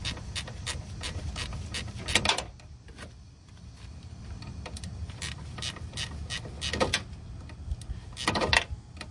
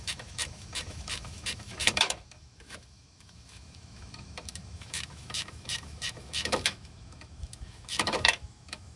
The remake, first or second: second